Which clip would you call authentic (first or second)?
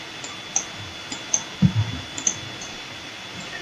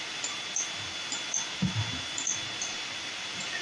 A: first